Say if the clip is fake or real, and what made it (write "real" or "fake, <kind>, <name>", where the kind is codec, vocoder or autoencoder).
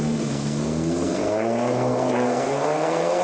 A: fake, codec, SNAC